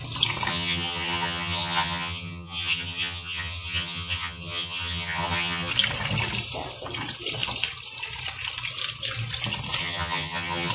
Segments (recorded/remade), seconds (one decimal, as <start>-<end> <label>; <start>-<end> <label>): 0.0-0.5 recorded; 0.5-5.7 remade; 5.7-9.8 recorded; 9.8-10.7 remade

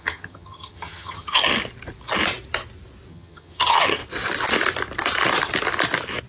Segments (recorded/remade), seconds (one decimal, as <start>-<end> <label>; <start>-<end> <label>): 0.0-1.5 remade; 1.5-3.1 recorded; 3.1-4.0 remade; 4.0-6.3 recorded

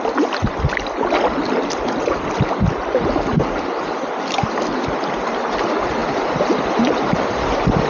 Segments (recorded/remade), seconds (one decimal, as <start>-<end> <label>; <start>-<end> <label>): 0.0-7.9 recorded

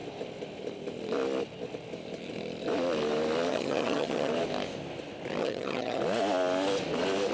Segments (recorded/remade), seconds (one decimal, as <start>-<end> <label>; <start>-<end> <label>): 0.0-3.5 recorded; 3.5-4.3 remade; 4.3-5.4 recorded; 5.4-6.0 remade; 6.0-7.3 recorded

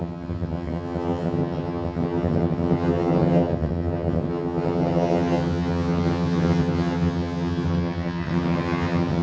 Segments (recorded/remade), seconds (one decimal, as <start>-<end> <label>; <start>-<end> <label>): 0.0-9.2 remade

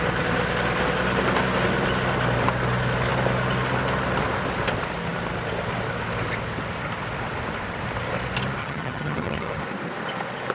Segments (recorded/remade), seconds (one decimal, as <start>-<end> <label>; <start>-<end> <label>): 0.0-8.6 recorded; 8.6-9.6 remade; 9.6-10.5 recorded

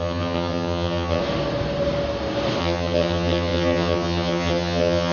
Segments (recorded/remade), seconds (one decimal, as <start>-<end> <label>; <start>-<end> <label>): 0.0-1.2 remade; 1.2-2.6 recorded; 2.6-5.1 remade

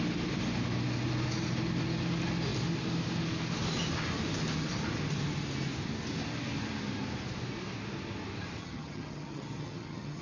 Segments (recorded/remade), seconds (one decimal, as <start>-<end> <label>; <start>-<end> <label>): 0.0-8.6 recorded; 8.6-10.2 remade